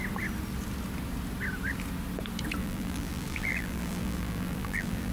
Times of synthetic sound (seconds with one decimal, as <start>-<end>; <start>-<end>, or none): 2.6-5.1